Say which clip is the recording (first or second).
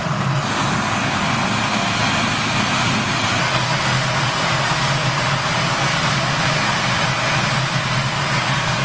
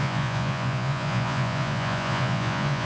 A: first